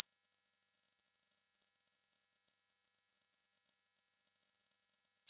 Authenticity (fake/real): real